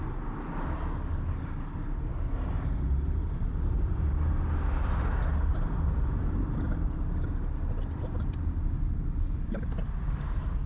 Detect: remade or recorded recorded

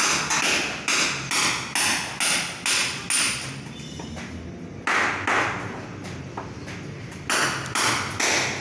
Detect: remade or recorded recorded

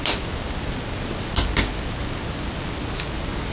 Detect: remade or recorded recorded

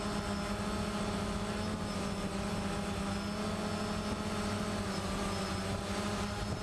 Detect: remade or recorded recorded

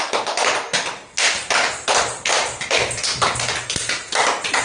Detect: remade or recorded recorded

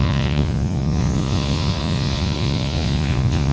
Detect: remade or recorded remade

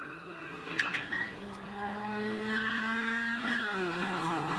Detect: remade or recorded remade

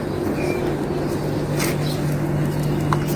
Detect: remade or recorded recorded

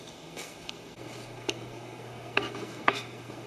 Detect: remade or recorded remade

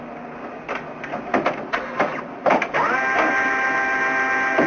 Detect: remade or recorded recorded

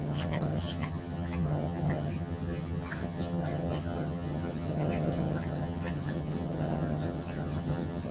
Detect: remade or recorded remade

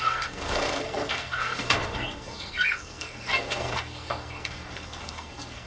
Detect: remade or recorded remade